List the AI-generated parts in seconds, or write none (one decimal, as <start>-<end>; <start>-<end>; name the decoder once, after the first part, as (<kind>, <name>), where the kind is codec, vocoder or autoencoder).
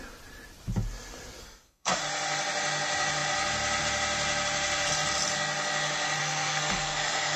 1.4-2.0 (codec, SNAC); 6.2-7.4